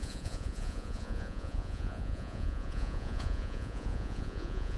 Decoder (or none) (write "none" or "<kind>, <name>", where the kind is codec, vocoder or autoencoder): vocoder, Vocos